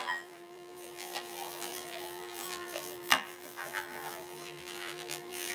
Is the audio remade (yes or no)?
yes